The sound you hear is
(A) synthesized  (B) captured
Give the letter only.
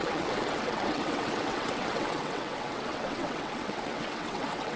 A